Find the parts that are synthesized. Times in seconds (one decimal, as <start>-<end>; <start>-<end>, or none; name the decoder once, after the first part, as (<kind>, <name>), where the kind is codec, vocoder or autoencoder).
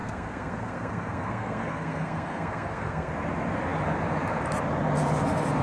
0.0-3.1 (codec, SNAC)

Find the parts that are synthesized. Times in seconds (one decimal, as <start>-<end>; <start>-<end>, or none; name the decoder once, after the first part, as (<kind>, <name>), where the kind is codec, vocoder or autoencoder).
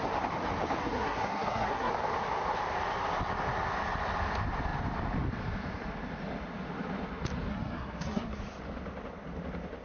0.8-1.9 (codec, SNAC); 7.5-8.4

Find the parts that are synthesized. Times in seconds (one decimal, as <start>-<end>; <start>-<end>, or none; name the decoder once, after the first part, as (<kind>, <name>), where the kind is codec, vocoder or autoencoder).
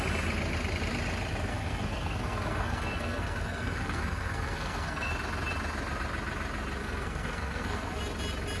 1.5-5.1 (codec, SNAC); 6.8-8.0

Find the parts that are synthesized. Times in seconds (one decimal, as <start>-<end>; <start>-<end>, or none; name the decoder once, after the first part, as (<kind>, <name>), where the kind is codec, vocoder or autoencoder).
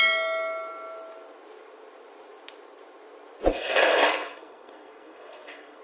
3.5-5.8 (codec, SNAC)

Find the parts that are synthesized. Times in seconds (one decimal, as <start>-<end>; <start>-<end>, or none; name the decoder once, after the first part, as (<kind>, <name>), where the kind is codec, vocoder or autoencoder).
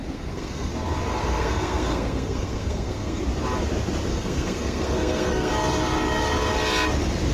0.0-0.7 (codec, SNAC); 1.1-3.2; 4.1-5.5